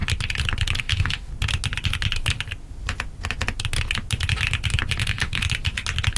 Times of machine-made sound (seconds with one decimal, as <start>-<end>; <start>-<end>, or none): 0.8-1.3; 5.0-5.4